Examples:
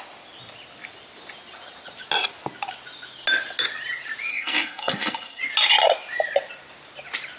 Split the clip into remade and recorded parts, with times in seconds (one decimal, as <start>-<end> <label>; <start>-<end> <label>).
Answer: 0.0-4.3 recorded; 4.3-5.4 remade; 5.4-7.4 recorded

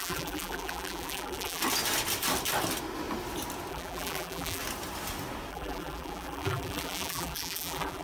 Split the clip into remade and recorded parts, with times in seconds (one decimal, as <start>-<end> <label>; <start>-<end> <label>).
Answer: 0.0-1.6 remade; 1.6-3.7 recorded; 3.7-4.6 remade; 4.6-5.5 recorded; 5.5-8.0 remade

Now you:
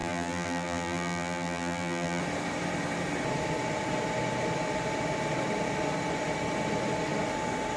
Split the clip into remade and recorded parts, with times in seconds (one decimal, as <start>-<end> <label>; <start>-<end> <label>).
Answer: 0.0-2.2 remade; 2.2-7.8 recorded

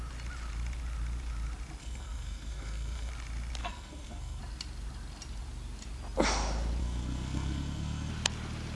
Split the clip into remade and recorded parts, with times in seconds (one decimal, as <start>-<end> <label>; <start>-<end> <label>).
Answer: 0.0-1.8 recorded; 1.8-3.1 remade; 3.1-3.6 recorded; 3.6-4.4 remade; 4.4-6.8 recorded; 6.8-8.1 remade; 8.1-8.7 recorded